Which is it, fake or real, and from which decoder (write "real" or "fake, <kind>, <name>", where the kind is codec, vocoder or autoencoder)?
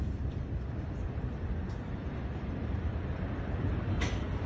fake, vocoder, BigVGAN v2